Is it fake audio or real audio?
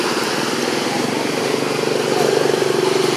real